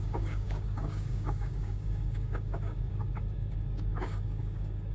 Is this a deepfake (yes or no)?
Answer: yes